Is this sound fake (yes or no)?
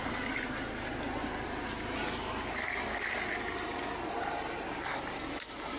no